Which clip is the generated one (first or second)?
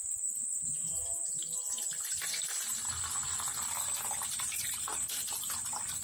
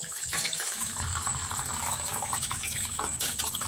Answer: second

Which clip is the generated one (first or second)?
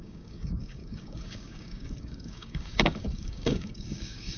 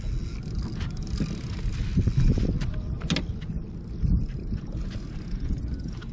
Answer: first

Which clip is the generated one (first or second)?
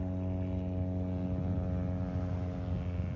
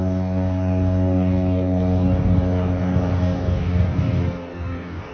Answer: second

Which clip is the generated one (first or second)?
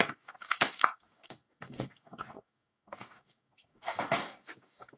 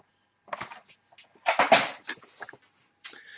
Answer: first